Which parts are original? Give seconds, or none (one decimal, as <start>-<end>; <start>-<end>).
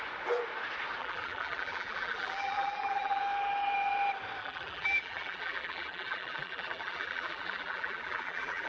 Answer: 0.0-1.0; 3.2-4.4